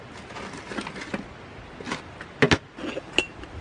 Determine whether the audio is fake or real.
real